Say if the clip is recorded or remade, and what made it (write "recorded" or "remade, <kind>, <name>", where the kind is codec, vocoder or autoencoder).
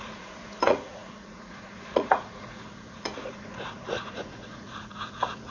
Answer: remade, vocoder, Vocos